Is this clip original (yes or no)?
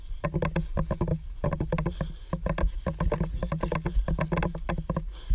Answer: yes